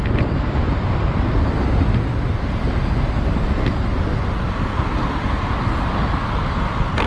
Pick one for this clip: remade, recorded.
recorded